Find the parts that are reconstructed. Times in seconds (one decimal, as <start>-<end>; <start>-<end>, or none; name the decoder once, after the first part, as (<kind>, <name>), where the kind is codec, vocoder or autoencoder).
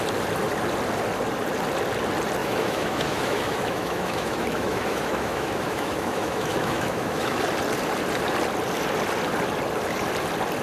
2.4-7.4 (autoencoder, DAC-VAE)